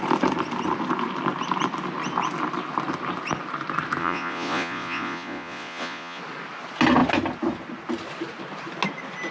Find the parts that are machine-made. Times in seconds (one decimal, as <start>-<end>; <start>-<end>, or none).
4.0-6.2

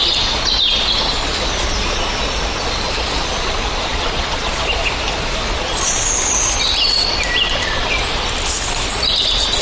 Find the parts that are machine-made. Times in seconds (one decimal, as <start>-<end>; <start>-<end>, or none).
3.9-4.5